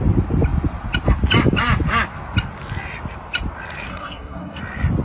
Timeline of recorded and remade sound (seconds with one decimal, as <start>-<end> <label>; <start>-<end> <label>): 0.0-3.9 recorded; 3.9-4.6 remade; 4.6-5.0 recorded